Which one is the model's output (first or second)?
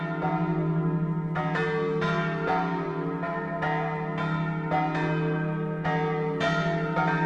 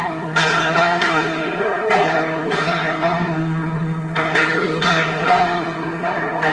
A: second